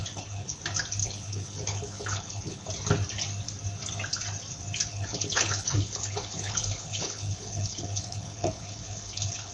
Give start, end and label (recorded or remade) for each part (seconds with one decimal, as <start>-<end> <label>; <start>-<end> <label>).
0.0-0.6 remade; 0.6-1.0 recorded; 1.0-2.7 remade; 2.7-4.9 recorded; 4.9-9.5 remade